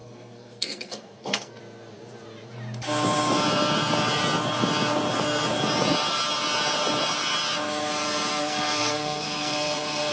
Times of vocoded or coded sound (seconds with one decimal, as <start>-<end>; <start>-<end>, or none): 0.0-1.6; 8.3-10.1

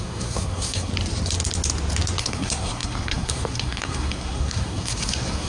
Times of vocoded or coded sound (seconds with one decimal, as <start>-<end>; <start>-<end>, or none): 0.0-0.9; 2.2-5.5

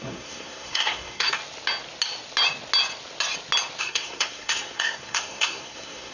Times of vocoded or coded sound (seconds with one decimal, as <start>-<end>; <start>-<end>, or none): 0.0-1.4; 3.8-6.1

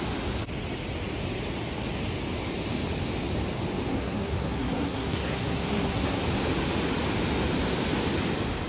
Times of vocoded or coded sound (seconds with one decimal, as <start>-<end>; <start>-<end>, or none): 3.9-6.2

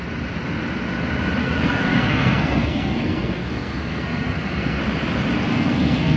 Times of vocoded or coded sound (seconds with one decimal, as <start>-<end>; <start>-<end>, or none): 1.4-4.8; 5.5-6.2

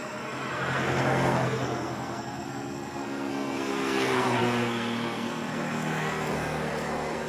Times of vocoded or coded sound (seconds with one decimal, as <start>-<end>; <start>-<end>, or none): 0.0-7.3

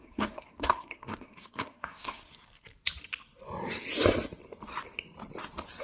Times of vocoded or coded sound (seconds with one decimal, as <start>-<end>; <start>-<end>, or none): 0.0-2.3

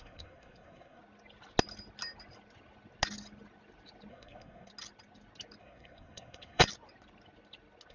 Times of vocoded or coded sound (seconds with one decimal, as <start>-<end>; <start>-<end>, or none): 0.0-1.0; 4.1-4.7; 5.6-6.6